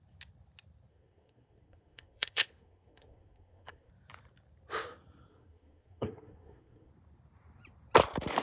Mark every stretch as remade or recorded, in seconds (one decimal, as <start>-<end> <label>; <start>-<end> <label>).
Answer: 0.0-0.9 recorded; 0.9-3.9 remade; 3.9-5.3 recorded; 5.3-6.9 remade; 6.9-8.4 recorded